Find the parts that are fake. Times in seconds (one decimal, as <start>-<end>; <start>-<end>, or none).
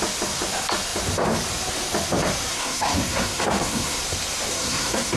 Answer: 2.5-4.0; 4.5-5.2